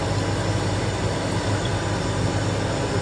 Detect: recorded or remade recorded